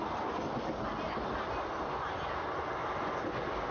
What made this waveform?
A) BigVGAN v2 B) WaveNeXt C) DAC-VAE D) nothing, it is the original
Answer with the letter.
D